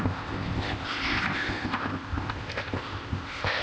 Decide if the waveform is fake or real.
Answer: fake